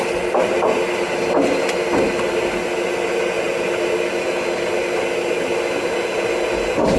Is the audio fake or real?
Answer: real